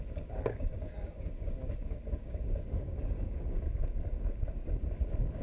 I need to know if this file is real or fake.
fake